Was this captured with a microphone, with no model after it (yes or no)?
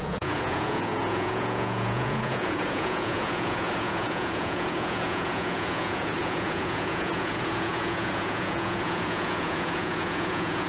no